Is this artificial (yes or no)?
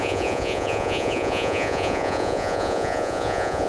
yes